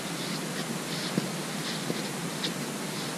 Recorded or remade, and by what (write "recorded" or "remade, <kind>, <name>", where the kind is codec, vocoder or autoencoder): recorded